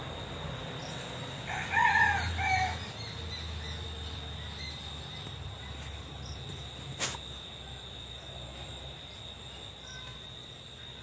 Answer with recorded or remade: recorded